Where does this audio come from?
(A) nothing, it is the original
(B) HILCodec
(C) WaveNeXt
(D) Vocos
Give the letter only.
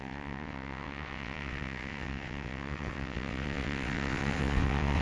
C